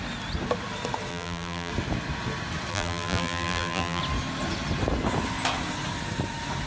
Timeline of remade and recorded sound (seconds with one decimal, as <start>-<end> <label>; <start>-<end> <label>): 0.0-1.1 recorded; 1.1-1.7 remade; 1.7-2.7 recorded; 2.7-4.0 remade; 4.0-6.7 recorded